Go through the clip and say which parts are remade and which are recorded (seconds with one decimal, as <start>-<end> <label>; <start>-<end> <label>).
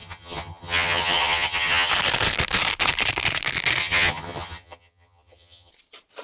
0.0-1.9 remade; 1.9-3.8 recorded; 3.8-5.7 remade; 5.7-6.2 recorded